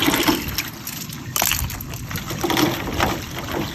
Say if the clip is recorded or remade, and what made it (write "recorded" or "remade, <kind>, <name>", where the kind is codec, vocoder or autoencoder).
recorded